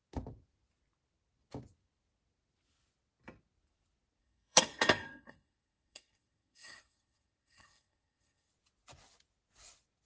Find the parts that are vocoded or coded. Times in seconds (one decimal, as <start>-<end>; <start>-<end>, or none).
4.2-8.5